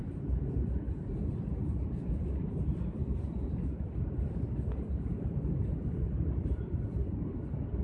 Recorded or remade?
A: recorded